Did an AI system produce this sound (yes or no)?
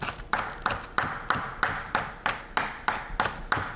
no